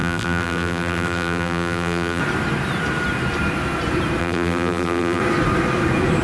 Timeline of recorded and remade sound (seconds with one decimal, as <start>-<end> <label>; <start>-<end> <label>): 0.0-2.2 remade; 2.2-4.2 recorded; 4.2-5.2 remade; 5.2-6.2 recorded